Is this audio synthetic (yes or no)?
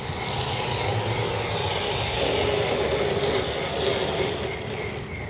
no